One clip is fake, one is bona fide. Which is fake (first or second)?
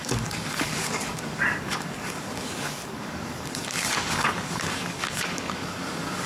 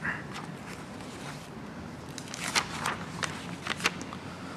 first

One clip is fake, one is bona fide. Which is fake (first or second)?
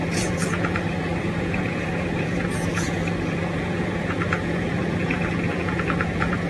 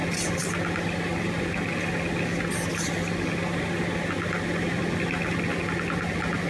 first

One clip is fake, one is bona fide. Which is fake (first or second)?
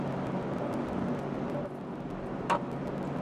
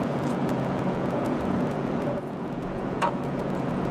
second